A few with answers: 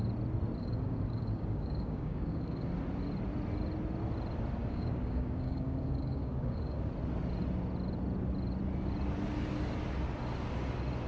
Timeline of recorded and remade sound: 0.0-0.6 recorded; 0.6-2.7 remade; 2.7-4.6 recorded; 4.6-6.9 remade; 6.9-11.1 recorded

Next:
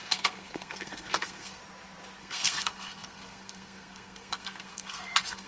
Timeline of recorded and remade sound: 0.0-1.6 remade; 1.6-2.2 recorded; 2.2-5.5 remade

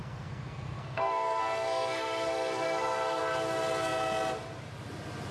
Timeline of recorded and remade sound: 0.0-3.2 remade; 3.2-5.3 recorded

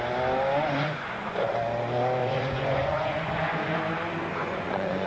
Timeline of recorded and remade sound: 0.0-0.6 recorded; 0.6-1.5 remade; 1.5-2.2 recorded; 2.2-3.8 remade; 3.8-4.4 recorded; 4.4-5.1 remade